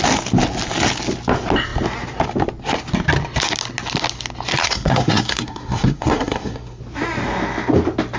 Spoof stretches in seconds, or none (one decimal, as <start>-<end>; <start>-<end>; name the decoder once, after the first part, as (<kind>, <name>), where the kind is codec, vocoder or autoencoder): 4.6-6.8 (codec, SNAC)